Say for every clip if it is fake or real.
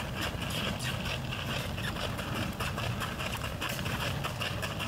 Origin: real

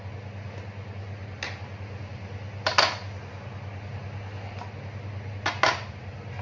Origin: real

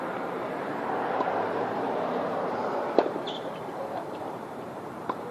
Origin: fake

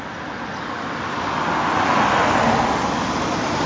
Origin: real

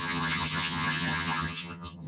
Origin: fake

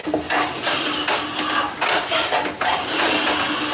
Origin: real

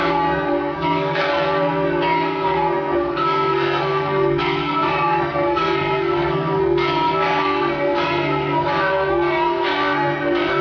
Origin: fake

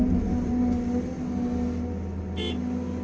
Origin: real